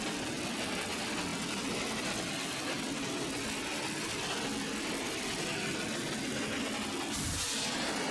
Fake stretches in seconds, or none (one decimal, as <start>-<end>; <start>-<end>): none